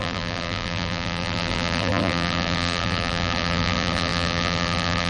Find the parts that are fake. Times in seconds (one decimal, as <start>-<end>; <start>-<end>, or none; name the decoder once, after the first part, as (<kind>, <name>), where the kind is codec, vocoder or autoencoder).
0.0-5.1 (vocoder, BigVGAN v2)